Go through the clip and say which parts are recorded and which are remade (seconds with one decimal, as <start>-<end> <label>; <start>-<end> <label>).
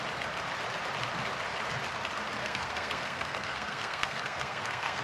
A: 0.0-2.4 recorded; 2.4-5.0 remade